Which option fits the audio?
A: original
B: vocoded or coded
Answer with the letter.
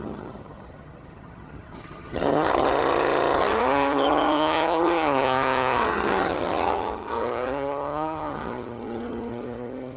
B